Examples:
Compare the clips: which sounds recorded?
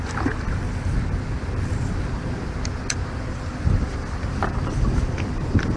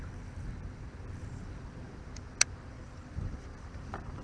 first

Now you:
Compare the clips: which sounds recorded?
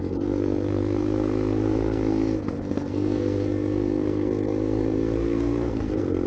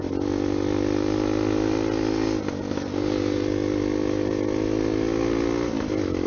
second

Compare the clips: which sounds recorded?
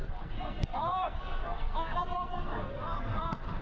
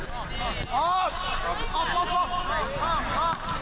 second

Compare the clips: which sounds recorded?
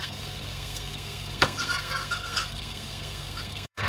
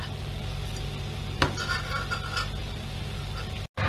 second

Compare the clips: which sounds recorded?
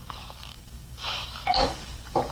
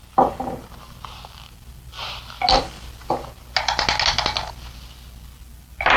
second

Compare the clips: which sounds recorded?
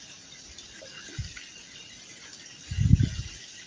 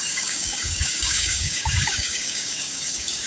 first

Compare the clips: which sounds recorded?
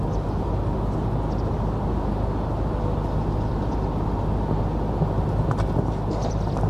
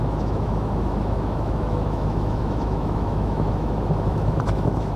first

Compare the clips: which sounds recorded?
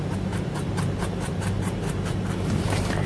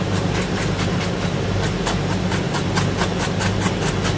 second